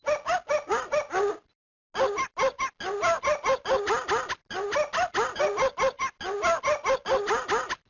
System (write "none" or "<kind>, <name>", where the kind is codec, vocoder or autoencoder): none